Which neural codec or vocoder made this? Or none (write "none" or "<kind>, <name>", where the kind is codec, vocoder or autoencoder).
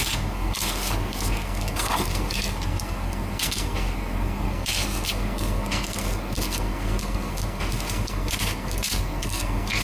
codec, SNAC